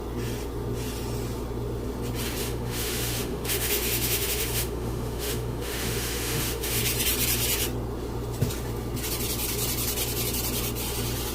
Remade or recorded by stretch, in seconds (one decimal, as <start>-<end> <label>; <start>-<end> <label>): 0.0-2.4 recorded; 2.4-6.8 remade; 6.8-11.3 recorded